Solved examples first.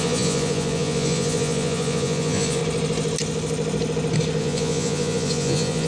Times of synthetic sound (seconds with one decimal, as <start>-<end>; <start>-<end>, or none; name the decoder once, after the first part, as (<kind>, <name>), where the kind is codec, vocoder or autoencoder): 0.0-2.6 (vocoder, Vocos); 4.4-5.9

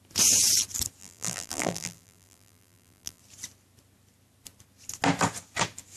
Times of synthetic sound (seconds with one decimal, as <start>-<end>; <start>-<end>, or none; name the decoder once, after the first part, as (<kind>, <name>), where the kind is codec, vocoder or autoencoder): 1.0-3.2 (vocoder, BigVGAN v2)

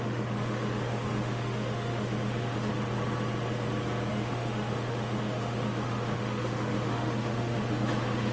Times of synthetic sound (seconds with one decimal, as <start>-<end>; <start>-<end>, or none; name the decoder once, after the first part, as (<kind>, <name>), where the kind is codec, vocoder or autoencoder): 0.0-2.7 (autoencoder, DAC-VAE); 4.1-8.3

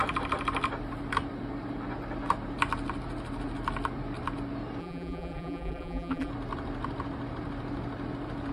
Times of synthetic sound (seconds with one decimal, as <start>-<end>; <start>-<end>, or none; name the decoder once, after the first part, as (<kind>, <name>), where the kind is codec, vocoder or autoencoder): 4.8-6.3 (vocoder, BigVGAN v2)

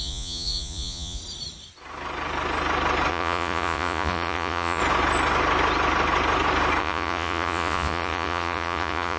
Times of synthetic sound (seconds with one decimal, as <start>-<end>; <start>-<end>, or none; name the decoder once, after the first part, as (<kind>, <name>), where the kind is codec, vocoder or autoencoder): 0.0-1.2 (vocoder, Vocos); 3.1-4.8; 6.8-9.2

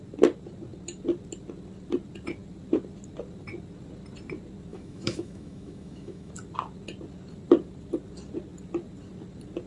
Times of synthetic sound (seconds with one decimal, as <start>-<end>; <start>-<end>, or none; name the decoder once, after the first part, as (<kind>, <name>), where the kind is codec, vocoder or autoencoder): 4.7-6.3 (autoencoder, DAC-VAE)

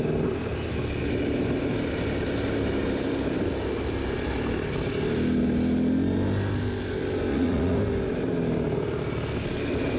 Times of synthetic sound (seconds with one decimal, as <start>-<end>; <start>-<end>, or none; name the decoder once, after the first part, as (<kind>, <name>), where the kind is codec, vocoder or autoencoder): 7.3-7.8 (vocoder, Vocos)

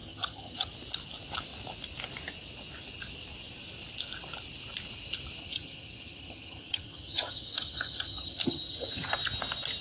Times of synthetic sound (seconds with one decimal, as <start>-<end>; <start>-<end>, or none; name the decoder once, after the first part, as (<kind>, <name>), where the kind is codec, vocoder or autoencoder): 0.0-0.7 (vocoder, HiFi-GAN); 5.4-9.1